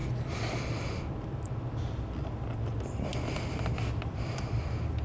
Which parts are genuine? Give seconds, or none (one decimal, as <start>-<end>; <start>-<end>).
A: 0.0-5.0